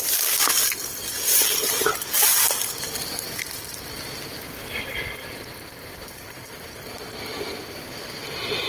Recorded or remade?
recorded